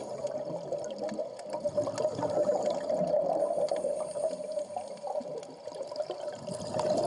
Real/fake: real